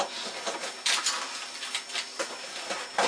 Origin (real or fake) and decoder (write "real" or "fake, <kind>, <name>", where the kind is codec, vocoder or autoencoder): real